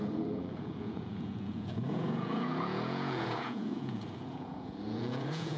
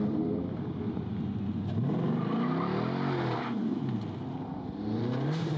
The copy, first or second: first